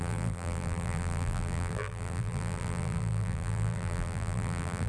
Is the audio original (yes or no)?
no